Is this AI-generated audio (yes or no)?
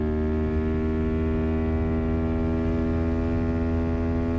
no